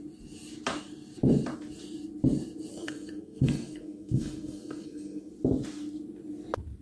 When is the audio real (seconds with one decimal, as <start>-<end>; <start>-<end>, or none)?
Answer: 0.0-2.7; 5.3-6.8